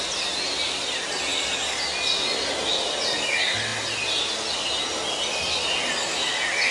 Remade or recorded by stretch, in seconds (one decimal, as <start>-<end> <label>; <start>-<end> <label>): 0.0-6.7 recorded